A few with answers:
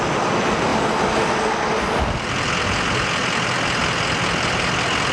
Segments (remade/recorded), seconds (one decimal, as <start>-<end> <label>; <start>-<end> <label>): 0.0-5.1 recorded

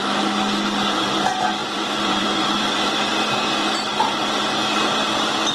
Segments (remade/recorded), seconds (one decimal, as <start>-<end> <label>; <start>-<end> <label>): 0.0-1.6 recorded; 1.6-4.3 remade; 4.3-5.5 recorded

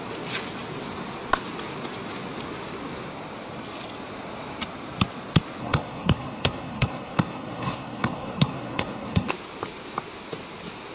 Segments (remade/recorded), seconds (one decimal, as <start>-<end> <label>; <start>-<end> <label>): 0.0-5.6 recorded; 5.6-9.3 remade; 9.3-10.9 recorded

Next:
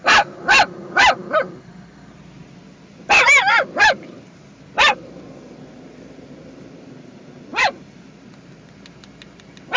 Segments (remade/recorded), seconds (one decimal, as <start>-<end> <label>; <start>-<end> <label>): 0.0-7.5 recorded; 7.5-8.1 remade; 8.1-9.8 recorded